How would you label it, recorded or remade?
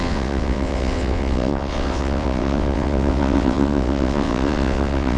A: remade